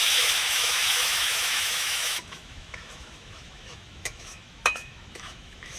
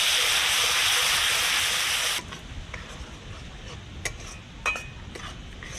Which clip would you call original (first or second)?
second